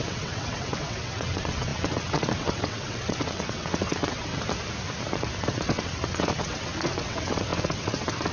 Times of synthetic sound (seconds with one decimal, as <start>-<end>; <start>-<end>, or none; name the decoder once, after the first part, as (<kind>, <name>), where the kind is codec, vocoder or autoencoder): 0.0-4.3 (vocoder, WaveNeXt); 5.4-8.3